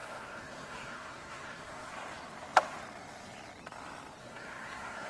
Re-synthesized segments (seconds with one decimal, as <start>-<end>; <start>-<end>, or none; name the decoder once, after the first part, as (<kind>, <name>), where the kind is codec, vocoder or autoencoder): 0.0-1.9 (codec, SNAC); 4.2-5.1